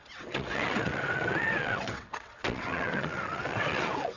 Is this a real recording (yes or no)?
no